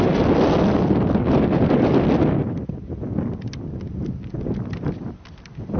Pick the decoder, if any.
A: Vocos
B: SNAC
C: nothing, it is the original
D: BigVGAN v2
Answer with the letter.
C